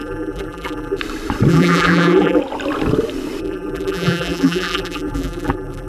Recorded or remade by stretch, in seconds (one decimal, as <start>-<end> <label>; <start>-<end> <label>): 0.0-1.0 remade; 1.0-1.5 recorded; 1.5-2.4 remade; 2.4-3.4 recorded; 3.4-5.9 remade